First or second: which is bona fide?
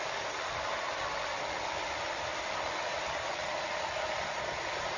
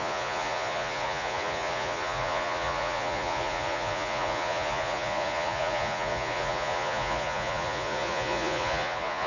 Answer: first